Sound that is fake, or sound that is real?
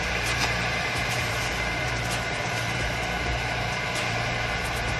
fake